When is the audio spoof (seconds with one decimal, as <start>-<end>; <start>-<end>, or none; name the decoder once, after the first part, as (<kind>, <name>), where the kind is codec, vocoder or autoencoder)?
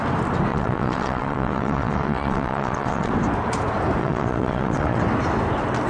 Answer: 0.5-3.1 (vocoder, WaveNeXt); 4.0-5.0